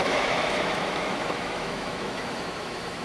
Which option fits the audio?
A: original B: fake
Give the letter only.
B